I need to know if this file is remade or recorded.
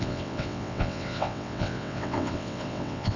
remade